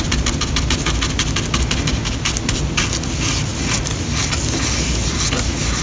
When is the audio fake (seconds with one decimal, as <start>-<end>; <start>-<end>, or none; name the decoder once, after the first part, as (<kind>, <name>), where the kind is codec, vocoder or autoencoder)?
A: none

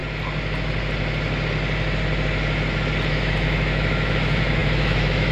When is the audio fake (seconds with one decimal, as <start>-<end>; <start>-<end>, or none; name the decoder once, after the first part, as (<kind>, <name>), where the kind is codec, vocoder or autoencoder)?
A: 3.1-5.3 (autoencoder, DAC-VAE)